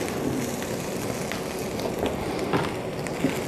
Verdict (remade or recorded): recorded